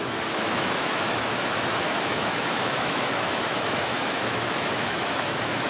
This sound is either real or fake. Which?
fake